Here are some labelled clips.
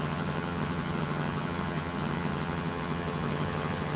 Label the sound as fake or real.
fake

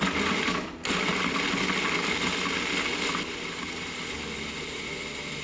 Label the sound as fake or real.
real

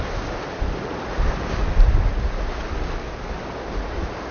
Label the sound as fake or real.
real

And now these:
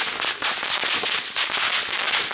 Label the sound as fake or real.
real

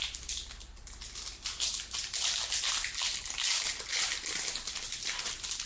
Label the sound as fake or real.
real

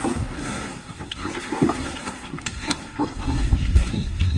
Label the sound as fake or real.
fake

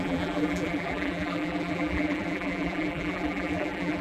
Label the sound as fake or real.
fake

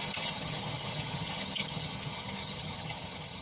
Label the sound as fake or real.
fake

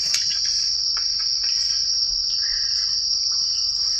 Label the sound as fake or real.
real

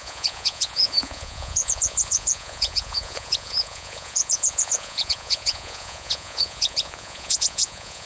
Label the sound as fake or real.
fake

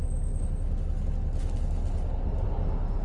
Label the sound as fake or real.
real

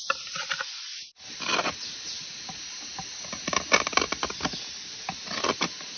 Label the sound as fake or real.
real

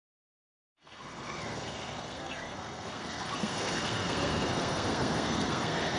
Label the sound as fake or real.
fake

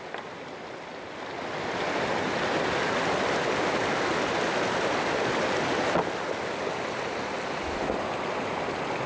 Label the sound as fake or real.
real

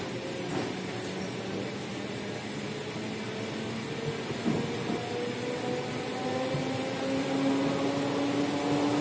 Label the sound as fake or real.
real